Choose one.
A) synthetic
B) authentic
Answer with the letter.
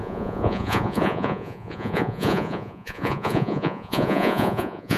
A